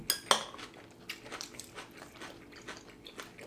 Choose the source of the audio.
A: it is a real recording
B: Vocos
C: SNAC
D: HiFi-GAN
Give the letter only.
A